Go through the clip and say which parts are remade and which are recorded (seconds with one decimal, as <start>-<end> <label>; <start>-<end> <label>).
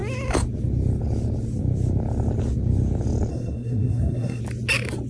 0.0-3.3 recorded; 3.3-4.4 remade; 4.4-5.1 recorded